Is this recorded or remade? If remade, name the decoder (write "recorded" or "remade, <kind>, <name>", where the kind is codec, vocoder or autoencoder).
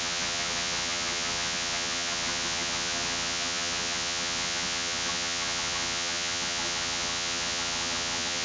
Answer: remade, vocoder, BigVGAN v2